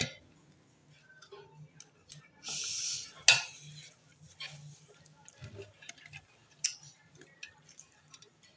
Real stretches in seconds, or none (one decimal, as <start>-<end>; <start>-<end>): 0.0-8.6